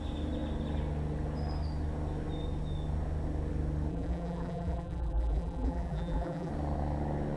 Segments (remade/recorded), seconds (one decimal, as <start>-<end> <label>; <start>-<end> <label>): 0.0-3.9 recorded; 3.9-6.5 remade; 6.5-7.4 recorded